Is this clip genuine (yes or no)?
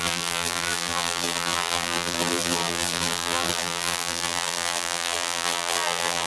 no